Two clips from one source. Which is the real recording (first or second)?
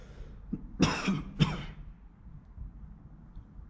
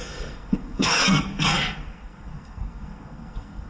first